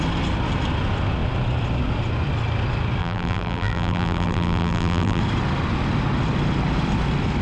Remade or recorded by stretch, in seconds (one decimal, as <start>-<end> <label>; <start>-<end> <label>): 0.0-3.0 recorded; 3.0-5.2 remade; 5.2-7.4 recorded